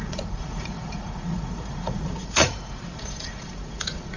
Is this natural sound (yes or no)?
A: no